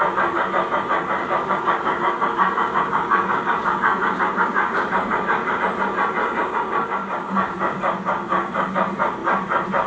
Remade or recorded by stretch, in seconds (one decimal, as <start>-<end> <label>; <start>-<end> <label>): 0.0-1.2 recorded; 1.2-5.6 remade; 5.6-6.2 recorded; 6.2-8.7 remade; 8.7-9.9 recorded